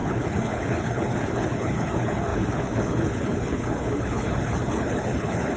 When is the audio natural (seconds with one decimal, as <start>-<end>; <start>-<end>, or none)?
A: none